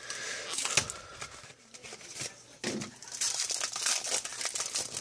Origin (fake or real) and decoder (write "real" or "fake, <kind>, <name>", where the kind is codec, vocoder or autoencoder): real